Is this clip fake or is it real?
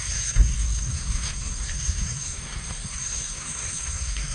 fake